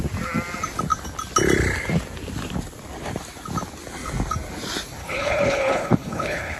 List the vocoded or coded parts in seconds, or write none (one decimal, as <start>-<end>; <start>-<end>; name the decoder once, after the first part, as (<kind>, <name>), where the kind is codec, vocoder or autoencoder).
5.0-6.6 (codec, HILCodec)